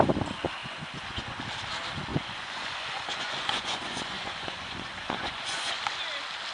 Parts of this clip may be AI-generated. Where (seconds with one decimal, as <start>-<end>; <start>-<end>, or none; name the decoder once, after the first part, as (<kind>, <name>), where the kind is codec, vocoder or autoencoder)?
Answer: 0.6-1.4 (vocoder, Vocos); 2.1-5.8